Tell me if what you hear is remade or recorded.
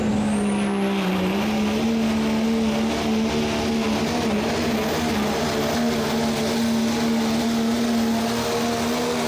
recorded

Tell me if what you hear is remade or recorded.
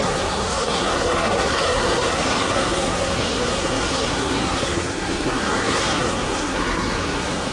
remade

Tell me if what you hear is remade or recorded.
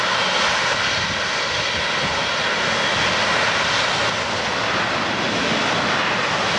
recorded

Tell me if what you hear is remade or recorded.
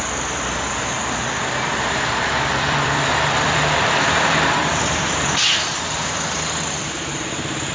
remade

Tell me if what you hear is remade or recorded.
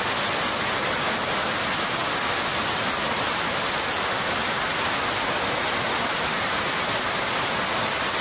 recorded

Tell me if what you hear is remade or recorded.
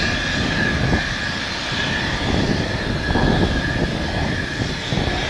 recorded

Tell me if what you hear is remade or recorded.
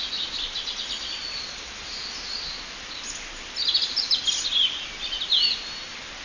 recorded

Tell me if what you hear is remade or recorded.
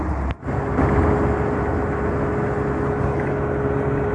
recorded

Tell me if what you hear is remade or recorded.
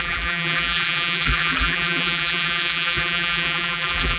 remade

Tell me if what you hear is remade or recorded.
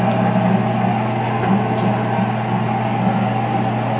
recorded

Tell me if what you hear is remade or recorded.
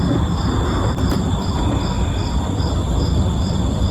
recorded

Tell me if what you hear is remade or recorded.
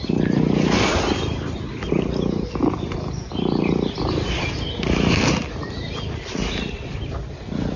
recorded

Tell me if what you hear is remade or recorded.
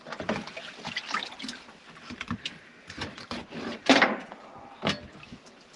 remade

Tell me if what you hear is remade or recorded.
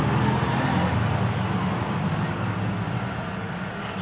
recorded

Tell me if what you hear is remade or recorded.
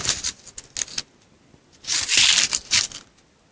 recorded